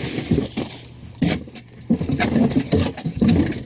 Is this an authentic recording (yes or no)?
yes